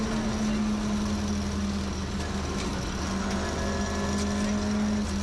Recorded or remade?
recorded